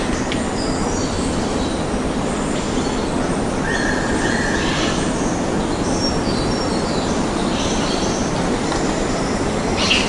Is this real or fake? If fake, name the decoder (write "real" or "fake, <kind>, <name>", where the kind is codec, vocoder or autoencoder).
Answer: real